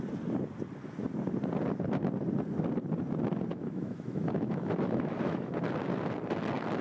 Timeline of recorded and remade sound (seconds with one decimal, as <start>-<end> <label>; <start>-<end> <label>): 0.0-3.5 recorded; 3.5-5.5 remade; 5.5-6.8 recorded

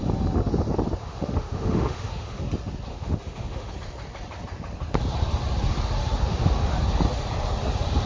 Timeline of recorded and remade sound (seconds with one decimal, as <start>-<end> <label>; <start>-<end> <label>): 0.0-1.0 recorded; 1.0-2.4 remade; 2.4-2.9 recorded; 2.9-3.7 remade; 3.7-6.0 recorded; 6.0-6.7 remade; 6.7-8.1 recorded